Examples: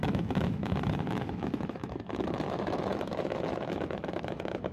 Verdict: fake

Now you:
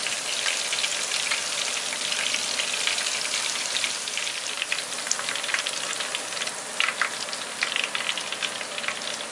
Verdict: real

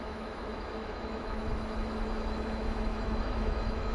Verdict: fake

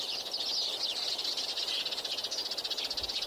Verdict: real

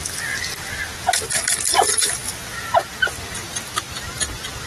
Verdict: real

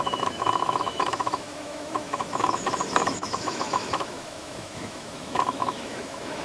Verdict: fake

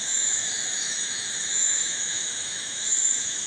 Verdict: fake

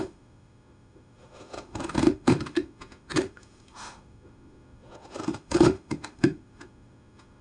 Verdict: fake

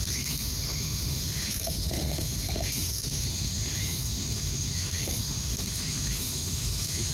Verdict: fake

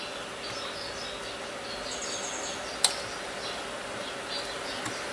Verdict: real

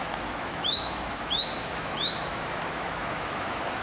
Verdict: fake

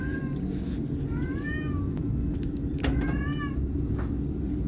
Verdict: real